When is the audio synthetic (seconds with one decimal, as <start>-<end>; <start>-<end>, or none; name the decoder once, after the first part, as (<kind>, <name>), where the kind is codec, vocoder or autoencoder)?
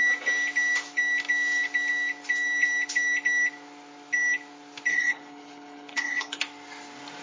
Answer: 4.9-6.4 (codec, HILCodec)